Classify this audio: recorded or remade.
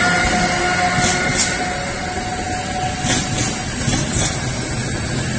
recorded